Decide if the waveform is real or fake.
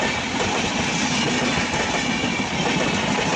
real